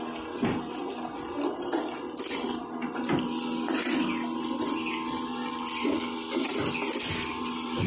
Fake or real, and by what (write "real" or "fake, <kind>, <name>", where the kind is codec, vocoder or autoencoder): real